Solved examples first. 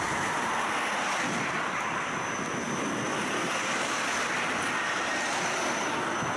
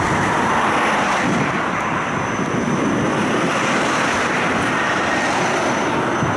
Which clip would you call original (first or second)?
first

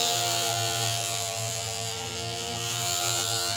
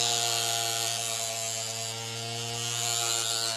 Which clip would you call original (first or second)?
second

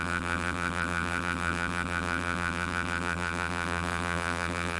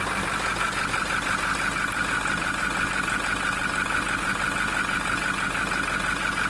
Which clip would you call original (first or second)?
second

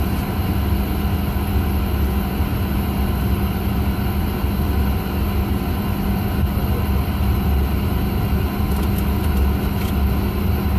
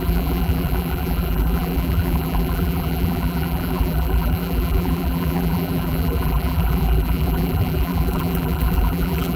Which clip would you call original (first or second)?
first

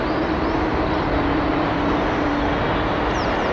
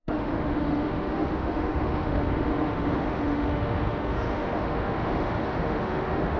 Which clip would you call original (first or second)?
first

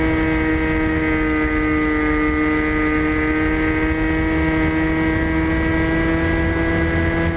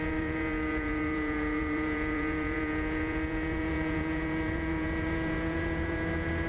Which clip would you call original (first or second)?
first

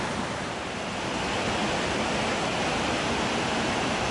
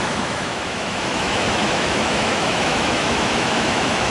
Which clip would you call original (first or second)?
first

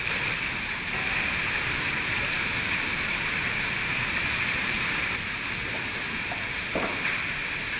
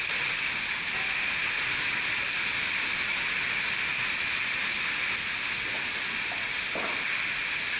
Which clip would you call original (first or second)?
second